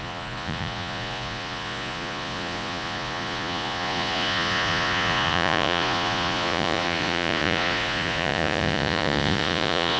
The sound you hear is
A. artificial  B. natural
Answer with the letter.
A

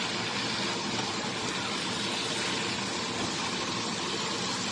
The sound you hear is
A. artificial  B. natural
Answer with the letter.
B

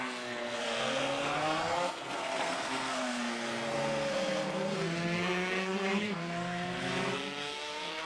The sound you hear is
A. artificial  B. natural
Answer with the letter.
A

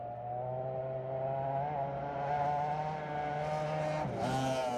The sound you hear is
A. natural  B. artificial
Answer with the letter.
A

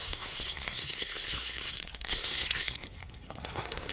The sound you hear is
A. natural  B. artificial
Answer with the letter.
B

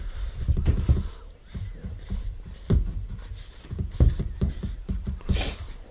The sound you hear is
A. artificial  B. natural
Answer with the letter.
A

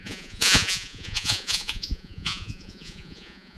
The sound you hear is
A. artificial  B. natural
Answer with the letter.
A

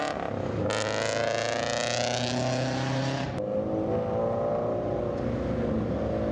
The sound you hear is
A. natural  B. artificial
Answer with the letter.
A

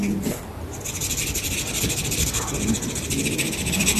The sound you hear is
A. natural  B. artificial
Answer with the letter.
A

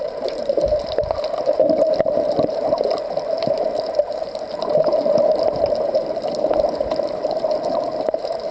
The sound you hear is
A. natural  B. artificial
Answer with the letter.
B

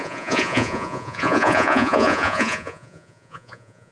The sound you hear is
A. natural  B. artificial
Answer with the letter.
B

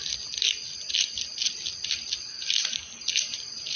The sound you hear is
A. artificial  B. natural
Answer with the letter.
B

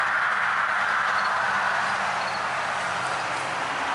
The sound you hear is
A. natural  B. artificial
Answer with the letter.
A